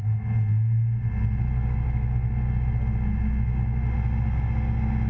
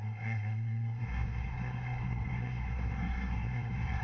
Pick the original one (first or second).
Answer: first